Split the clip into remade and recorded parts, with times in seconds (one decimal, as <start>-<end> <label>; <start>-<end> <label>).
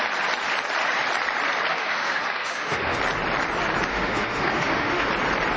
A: 0.0-1.7 recorded; 1.7-3.0 remade; 3.0-3.9 recorded; 3.9-5.1 remade; 5.1-5.6 recorded